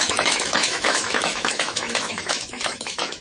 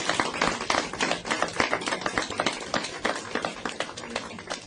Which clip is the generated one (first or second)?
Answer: first